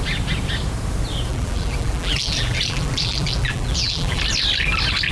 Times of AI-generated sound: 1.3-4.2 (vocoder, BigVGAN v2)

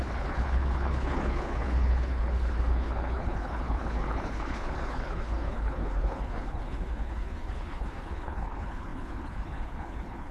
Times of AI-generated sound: 0.0-10.3 (codec, HILCodec)